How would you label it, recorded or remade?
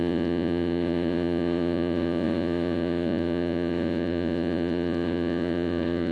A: remade